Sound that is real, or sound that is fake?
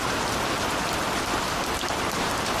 real